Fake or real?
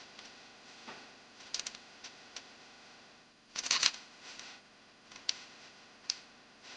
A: fake